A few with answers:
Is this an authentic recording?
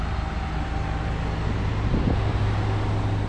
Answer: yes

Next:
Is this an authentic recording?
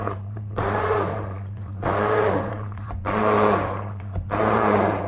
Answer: no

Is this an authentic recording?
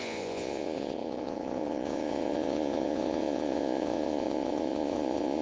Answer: no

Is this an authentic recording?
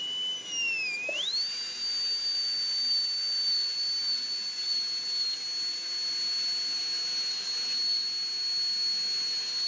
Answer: yes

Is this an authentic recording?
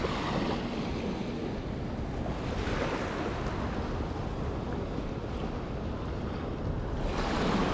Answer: yes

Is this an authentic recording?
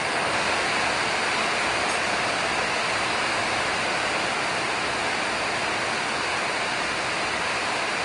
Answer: yes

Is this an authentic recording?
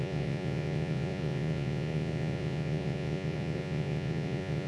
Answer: no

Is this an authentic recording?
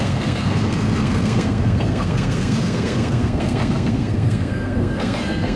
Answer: no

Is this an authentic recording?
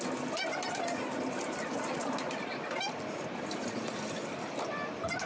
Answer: yes